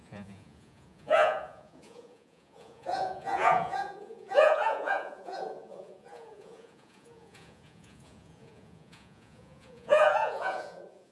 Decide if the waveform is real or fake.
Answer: fake